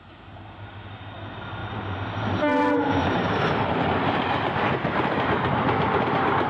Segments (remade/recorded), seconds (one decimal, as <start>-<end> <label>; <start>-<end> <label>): 0.0-6.5 recorded